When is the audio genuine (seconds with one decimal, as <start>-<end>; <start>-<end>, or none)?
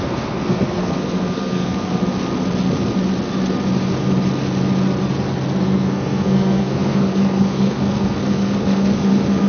2.0-5.6